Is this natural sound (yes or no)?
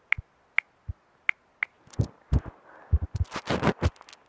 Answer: yes